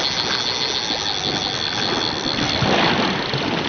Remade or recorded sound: recorded